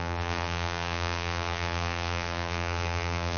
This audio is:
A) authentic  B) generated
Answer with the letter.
B